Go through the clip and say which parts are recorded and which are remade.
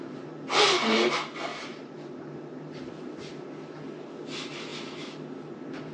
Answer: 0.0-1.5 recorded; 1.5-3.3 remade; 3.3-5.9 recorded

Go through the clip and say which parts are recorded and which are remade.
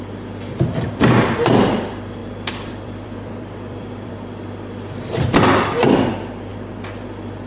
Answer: 0.0-2.2 recorded; 2.2-4.1 remade; 4.1-7.5 recorded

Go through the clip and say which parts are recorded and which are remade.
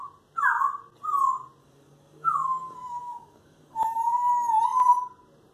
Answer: 0.0-1.6 recorded; 1.6-4.3 remade; 4.3-5.5 recorded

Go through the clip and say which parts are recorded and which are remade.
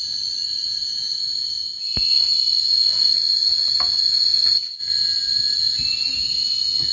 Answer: 0.0-6.9 recorded